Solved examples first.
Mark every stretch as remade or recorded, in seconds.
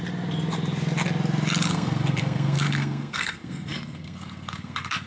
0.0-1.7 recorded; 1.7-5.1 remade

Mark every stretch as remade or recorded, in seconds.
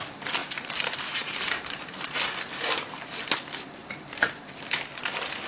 0.0-0.4 recorded; 0.4-1.9 remade; 1.9-2.5 recorded; 2.5-3.3 remade; 3.3-3.8 recorded; 3.8-4.4 remade; 4.4-5.5 recorded